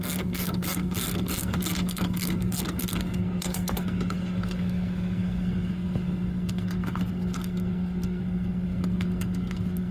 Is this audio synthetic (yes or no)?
yes